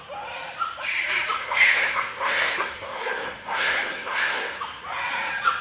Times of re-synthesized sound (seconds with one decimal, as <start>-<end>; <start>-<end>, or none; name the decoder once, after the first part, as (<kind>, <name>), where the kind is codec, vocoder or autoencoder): 1.4-4.6 (codec, SNAC)